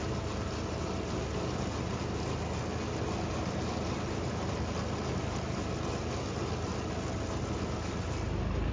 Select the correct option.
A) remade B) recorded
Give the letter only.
B